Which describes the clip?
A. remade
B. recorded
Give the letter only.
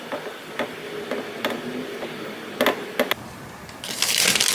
B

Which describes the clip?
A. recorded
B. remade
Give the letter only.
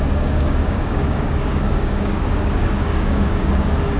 B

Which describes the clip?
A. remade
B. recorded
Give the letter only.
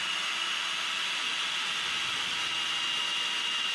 B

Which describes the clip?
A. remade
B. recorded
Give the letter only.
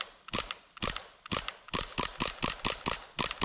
B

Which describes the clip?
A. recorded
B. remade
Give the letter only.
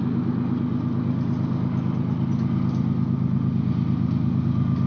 A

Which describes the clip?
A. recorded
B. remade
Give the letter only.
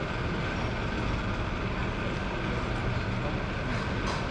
A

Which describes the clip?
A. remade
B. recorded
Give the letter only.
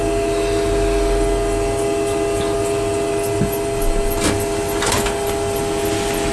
B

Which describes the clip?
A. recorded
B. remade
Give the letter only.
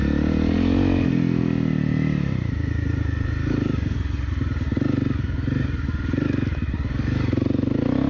A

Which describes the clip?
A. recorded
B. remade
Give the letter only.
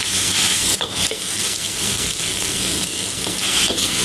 B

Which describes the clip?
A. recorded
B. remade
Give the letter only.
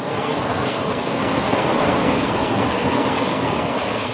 B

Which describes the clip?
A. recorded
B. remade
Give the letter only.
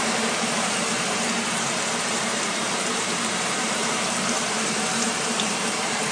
B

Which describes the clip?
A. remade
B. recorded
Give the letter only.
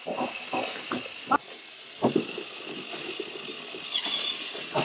B